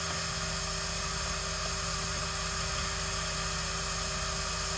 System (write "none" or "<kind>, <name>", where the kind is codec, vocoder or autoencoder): none